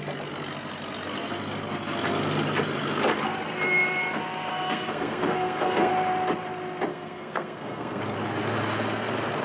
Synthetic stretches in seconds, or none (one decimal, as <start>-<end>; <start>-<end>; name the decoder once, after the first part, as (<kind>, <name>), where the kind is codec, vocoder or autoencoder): 4.5-5.9 (codec, SNAC); 6.9-8.0